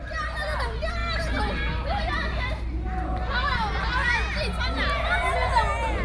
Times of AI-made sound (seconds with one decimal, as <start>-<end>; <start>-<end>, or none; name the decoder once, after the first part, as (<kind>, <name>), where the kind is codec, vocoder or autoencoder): none